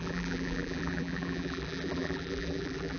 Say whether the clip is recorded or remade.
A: remade